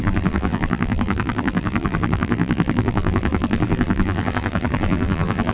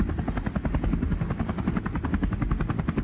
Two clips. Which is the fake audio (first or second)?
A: first